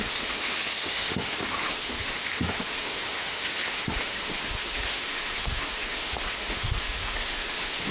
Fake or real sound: fake